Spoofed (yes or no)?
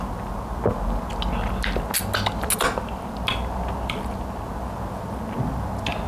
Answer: no